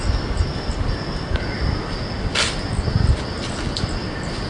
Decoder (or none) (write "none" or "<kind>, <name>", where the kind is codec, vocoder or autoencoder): none